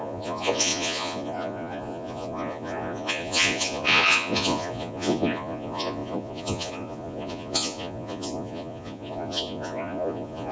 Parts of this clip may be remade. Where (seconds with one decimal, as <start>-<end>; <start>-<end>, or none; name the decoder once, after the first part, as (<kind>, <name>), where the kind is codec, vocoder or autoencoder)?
0.0-10.5 (vocoder, Vocos)